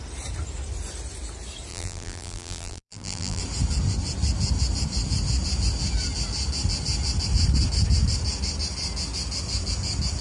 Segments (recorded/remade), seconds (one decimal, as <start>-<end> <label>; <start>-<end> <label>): 0.0-1.7 recorded; 1.7-3.4 remade; 3.4-10.2 recorded